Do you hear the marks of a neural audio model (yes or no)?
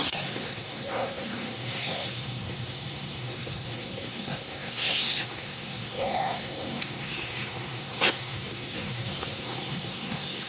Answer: yes